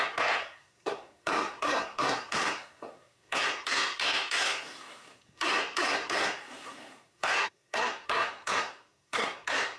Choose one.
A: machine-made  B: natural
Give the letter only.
A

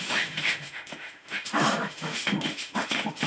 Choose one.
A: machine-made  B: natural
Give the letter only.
A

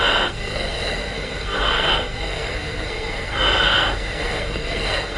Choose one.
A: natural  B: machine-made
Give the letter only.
B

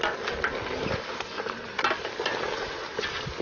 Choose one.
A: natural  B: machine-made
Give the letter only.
A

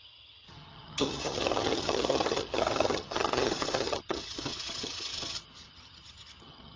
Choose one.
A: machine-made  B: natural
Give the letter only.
A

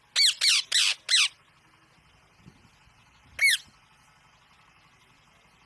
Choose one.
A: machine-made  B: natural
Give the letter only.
B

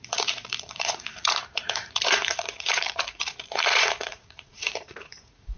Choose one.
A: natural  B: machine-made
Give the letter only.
B